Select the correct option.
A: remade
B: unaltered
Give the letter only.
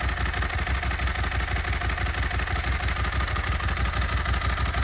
B